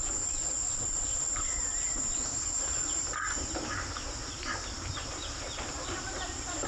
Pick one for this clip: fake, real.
fake